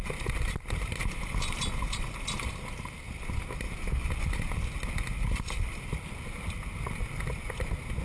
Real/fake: real